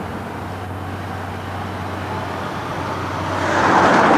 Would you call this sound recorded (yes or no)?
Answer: yes